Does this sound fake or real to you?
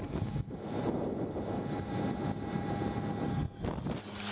real